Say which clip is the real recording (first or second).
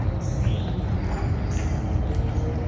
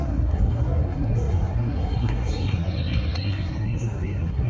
first